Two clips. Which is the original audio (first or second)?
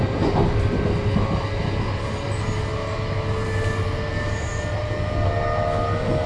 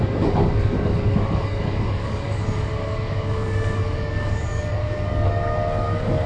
first